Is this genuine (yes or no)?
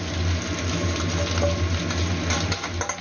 yes